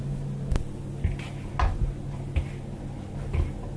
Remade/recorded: recorded